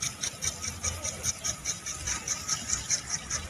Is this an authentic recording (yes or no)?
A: yes